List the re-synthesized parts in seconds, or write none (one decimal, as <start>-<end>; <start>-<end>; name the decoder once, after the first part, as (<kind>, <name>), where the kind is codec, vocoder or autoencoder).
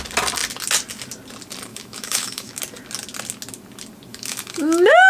1.7-2.6 (autoencoder, DAC-VAE); 4.1-5.1